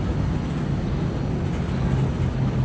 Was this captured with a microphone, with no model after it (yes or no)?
yes